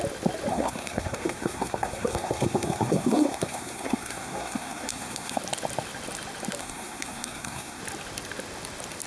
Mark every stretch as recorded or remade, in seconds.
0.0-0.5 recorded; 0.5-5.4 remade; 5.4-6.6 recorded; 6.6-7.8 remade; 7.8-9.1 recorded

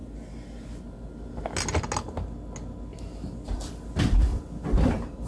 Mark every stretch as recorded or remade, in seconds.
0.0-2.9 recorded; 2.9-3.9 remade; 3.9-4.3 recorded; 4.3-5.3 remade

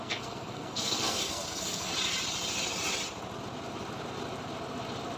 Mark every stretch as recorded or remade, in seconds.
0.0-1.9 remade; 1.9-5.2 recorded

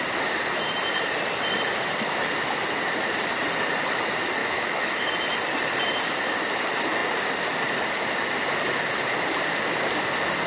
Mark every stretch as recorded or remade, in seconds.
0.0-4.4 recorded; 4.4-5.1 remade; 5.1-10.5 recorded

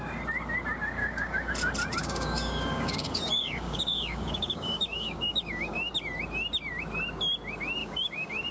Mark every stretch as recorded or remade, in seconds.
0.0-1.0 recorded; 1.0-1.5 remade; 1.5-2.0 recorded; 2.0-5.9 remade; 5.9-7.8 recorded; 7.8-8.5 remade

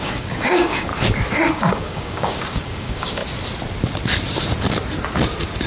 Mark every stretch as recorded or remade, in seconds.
0.0-0.9 remade; 0.9-1.7 recorded; 1.7-3.2 remade; 3.2-5.7 recorded

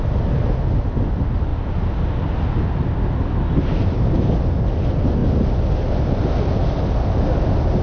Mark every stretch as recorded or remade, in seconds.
0.0-7.8 recorded